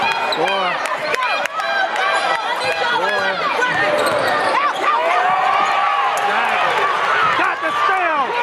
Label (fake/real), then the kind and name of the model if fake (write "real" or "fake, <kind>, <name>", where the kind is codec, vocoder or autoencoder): real